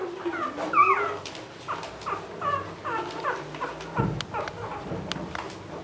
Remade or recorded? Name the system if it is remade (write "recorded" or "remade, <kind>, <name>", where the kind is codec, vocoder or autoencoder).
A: recorded